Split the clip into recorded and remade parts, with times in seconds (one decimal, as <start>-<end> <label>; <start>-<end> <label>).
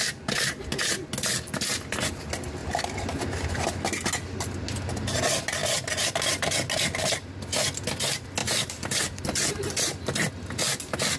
0.0-2.6 recorded; 2.6-3.2 remade; 3.2-5.6 recorded; 5.6-6.2 remade; 6.2-8.4 recorded; 8.4-10.3 remade; 10.3-11.2 recorded